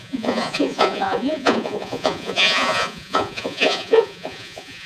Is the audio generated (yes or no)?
yes